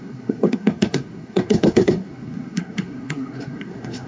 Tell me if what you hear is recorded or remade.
remade